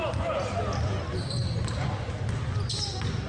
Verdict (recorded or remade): recorded